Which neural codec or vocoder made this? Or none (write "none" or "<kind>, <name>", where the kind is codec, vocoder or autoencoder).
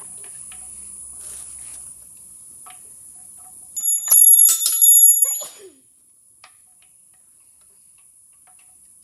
none